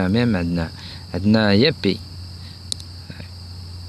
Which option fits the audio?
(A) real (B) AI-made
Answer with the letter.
A